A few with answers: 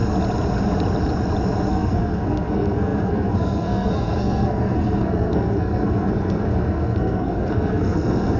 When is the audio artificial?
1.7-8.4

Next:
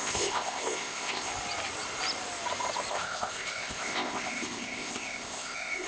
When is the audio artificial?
0.0-1.3; 2.9-5.9

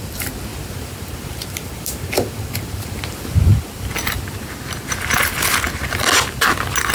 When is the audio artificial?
0.5-3.0

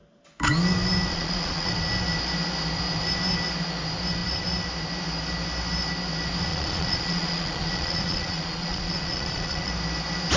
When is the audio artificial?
1.1-1.7; 6.5-9.7

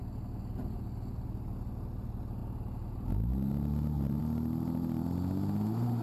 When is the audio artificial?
none